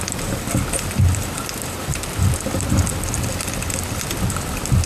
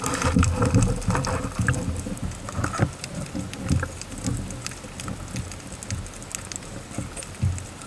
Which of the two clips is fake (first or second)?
first